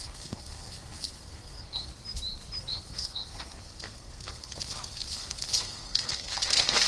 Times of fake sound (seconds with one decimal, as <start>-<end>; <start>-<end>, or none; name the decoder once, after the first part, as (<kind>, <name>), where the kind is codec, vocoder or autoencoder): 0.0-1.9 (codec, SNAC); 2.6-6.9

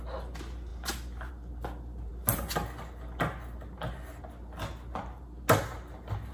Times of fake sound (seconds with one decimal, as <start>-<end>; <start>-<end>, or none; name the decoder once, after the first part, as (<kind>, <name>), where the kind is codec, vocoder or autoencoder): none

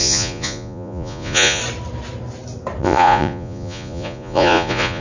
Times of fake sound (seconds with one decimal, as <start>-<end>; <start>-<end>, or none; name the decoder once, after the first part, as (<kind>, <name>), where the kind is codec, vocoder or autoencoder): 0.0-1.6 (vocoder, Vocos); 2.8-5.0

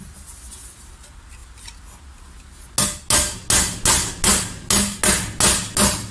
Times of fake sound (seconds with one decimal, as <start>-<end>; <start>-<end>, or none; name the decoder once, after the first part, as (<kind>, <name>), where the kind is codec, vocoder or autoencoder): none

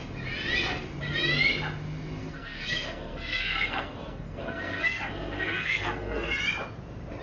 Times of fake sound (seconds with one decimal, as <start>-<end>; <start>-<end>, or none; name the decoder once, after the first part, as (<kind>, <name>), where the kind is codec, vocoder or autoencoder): 2.2-6.4 (codec, SNAC)